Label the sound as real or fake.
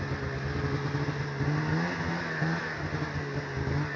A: real